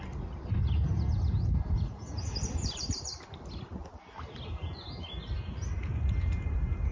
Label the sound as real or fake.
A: real